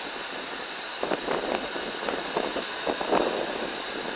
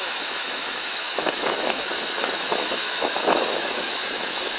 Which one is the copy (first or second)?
second